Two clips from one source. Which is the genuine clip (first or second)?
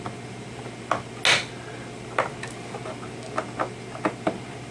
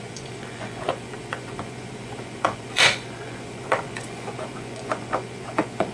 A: first